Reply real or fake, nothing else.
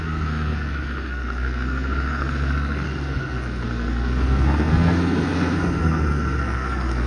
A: fake